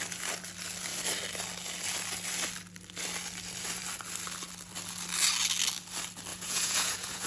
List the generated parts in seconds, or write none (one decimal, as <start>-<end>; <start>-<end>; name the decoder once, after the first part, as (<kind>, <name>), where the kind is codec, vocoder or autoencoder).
6.3-7.3 (vocoder, Vocos)